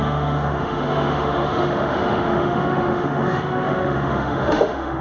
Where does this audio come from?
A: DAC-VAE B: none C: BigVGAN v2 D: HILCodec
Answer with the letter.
A